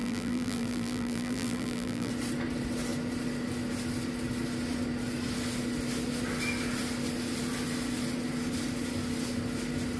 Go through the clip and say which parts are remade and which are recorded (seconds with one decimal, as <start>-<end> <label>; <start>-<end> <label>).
0.0-2.1 remade; 2.1-10.0 recorded